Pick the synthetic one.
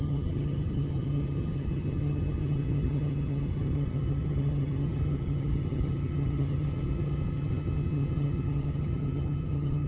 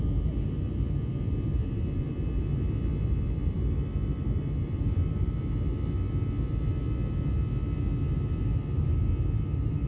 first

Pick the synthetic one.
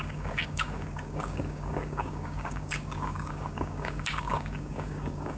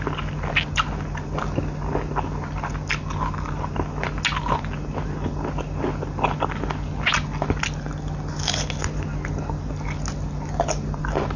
first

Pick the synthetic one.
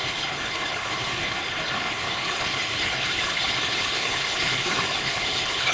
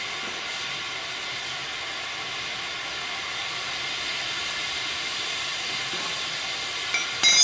first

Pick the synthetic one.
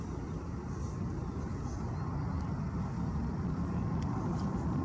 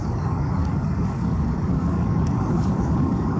second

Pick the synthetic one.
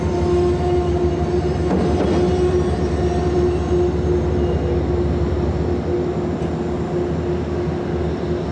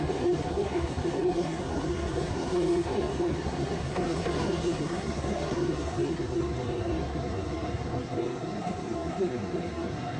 second